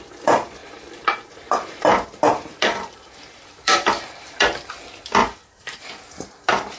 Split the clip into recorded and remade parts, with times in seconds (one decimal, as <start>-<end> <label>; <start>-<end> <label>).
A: 0.0-0.6 recorded; 0.6-4.7 remade; 4.7-5.2 recorded; 5.2-5.8 remade; 5.8-6.8 recorded